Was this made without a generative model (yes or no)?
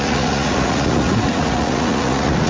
no